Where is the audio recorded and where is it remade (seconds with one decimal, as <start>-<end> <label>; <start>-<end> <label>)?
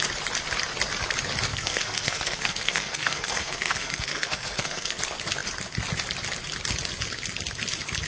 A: 0.0-1.5 recorded; 1.5-5.0 remade; 5.0-8.1 recorded